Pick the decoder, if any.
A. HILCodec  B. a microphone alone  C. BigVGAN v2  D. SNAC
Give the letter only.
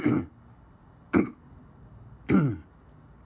B